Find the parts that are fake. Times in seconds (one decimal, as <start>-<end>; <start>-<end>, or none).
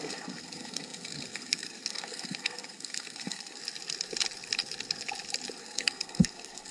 0.0-3.6; 5.6-6.7